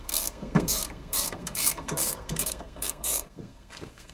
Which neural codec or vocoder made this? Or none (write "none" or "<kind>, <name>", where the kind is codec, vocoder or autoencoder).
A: codec, SNAC